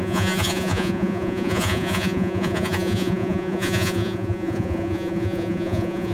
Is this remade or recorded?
remade